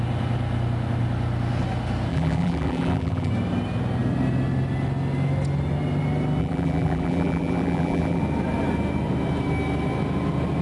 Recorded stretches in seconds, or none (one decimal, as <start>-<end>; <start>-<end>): 0.0-2.1; 3.3-6.4; 8.2-10.6